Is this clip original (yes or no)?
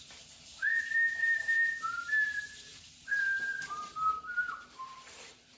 no